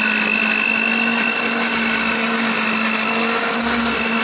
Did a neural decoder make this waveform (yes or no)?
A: no